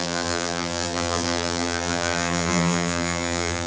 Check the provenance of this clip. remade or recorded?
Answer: remade